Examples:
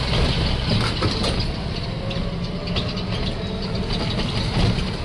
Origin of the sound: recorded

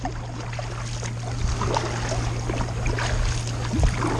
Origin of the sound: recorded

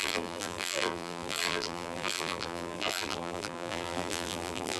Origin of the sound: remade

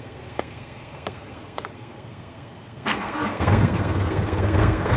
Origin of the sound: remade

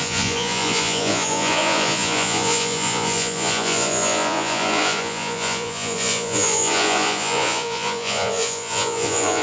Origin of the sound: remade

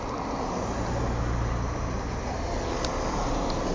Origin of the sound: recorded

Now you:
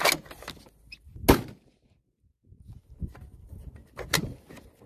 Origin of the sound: recorded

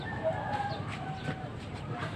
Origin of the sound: remade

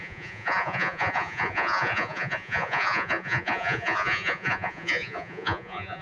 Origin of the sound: remade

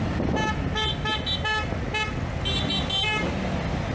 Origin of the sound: recorded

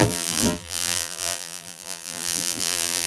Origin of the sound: remade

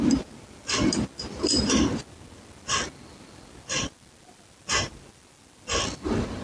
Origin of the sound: recorded